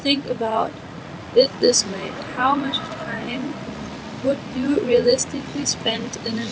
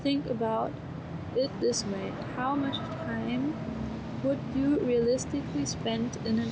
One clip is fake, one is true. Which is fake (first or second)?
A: first